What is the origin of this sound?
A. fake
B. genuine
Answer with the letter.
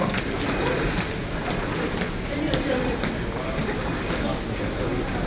B